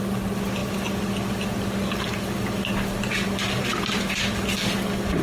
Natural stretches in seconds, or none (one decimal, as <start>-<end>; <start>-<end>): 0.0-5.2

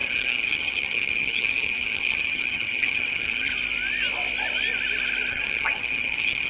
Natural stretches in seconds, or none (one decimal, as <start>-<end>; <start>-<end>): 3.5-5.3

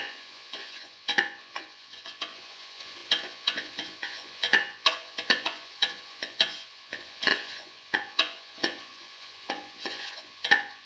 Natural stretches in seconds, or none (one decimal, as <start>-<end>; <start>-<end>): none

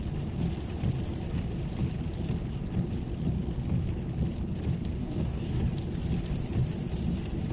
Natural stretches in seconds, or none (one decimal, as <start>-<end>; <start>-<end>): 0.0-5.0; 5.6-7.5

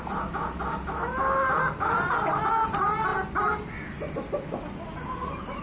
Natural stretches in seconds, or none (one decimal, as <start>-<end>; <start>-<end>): 0.0-5.6

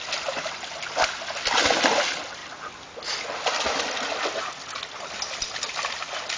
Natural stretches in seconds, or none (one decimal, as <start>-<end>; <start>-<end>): 0.0-6.4

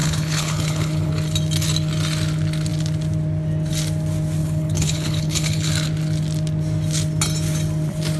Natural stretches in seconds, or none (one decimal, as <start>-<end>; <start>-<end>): 1.1-4.4; 5.7-8.2

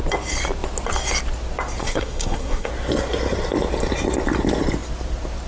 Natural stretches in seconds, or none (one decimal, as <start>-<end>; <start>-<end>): 0.0-1.8; 2.7-5.5